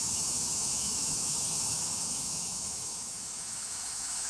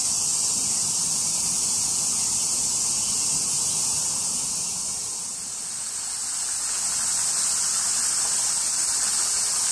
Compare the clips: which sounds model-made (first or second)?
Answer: first